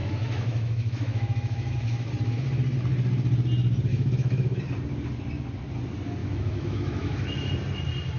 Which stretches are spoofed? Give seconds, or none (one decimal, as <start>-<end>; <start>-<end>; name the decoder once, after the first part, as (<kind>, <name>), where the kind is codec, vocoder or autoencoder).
0.0-2.1 (autoencoder, DAC-VAE); 3.9-4.6; 6.2-7.5